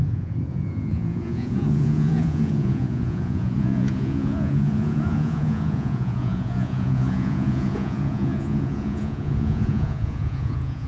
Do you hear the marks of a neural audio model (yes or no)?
yes